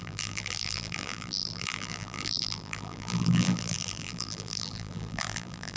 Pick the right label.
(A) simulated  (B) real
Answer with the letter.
A